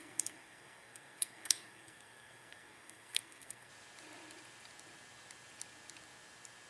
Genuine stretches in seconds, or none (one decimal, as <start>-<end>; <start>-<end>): 3.7-6.7

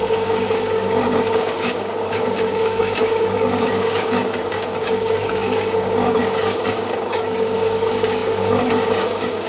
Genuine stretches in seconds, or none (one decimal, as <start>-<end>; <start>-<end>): none

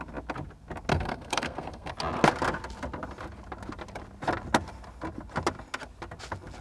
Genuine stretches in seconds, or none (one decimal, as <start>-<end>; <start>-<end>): 0.0-0.9; 1.9-6.6

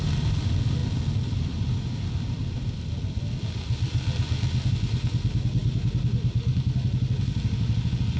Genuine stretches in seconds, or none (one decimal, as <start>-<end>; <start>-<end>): 0.0-8.2

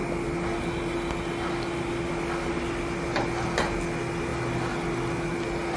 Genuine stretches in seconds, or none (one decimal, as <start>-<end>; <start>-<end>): 0.0-5.8

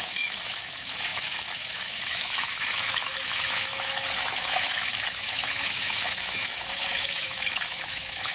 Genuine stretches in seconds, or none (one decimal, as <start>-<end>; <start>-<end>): none

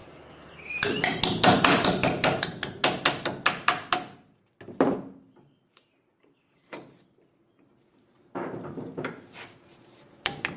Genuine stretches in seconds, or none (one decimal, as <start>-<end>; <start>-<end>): 2.8-5.3

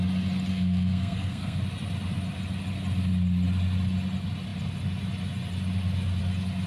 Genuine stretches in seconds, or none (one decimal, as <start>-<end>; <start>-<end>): 0.0-0.5; 1.6-6.7